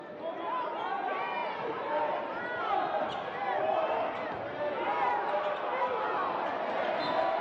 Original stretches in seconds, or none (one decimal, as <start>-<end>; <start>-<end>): 0.0-7.4